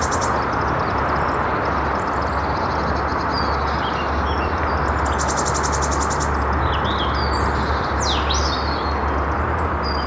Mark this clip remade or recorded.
recorded